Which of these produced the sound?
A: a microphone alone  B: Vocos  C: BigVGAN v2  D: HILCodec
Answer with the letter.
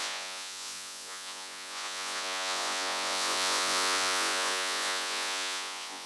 B